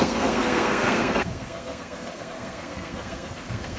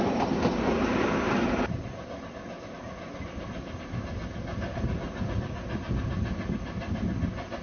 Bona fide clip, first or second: second